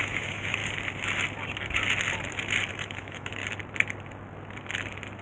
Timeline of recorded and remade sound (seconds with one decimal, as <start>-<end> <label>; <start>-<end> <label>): 0.0-0.6 remade; 0.6-2.7 recorded; 2.7-3.4 remade; 3.4-5.2 recorded